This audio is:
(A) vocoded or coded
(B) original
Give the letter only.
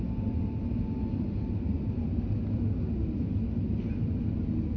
B